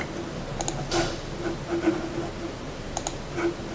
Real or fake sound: real